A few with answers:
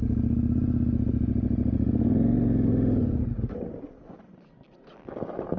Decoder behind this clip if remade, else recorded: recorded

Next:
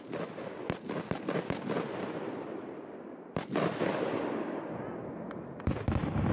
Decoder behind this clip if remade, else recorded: recorded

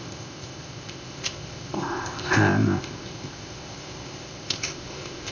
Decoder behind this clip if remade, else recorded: remade, codec, ZipCodec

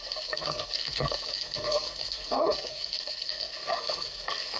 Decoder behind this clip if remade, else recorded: remade, codec, SNAC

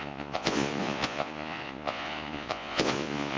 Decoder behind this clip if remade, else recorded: remade, vocoder, Vocos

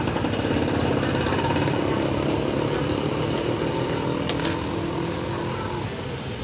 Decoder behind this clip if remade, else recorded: recorded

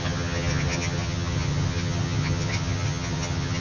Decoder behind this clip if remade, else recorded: remade, vocoder, HiFi-GAN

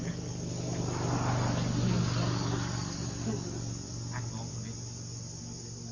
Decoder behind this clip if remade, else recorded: recorded